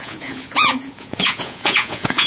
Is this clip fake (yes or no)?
yes